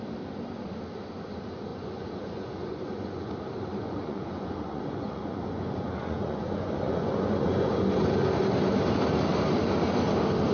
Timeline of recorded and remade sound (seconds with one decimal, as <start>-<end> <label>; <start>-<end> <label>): 0.0-1.7 recorded; 1.7-3.3 remade; 3.3-3.8 recorded; 3.8-7.7 remade; 7.7-10.5 recorded